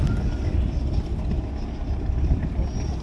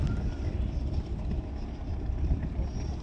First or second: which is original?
first